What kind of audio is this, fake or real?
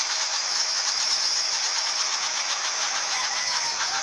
fake